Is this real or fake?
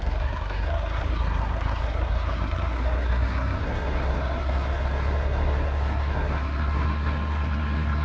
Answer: fake